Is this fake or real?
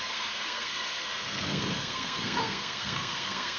fake